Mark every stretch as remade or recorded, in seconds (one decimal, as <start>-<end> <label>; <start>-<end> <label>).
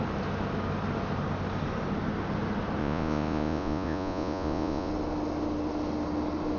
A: 0.0-2.8 recorded; 2.8-4.9 remade; 4.9-6.6 recorded